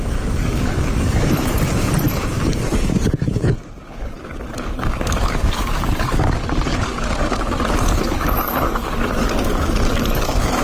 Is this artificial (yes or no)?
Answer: yes